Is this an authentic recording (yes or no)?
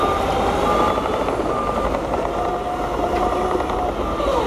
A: yes